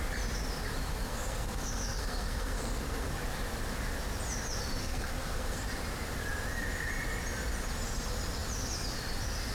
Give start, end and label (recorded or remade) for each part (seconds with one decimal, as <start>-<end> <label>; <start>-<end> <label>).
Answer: 0.0-0.9 recorded; 0.9-3.2 remade; 3.2-4.8 recorded; 4.8-5.6 remade; 5.6-9.5 recorded